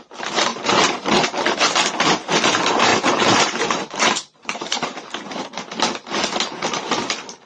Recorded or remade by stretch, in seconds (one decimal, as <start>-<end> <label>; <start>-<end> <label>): 0.0-0.5 recorded; 0.5-1.9 remade; 1.9-2.9 recorded; 2.9-5.6 remade; 5.6-7.5 recorded